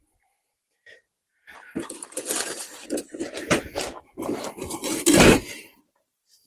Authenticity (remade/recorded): remade